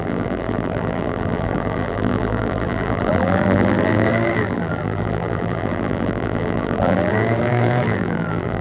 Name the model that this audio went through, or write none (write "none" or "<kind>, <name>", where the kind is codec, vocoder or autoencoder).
vocoder, BigVGAN v2